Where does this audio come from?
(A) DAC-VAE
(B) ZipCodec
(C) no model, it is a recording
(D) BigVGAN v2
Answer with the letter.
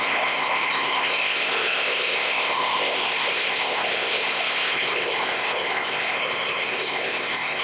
B